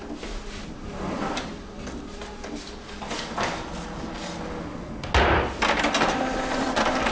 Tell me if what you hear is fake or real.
real